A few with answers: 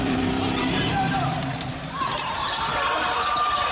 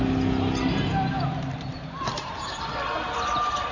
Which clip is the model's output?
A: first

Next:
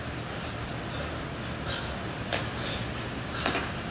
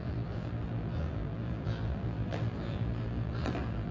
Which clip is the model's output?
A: second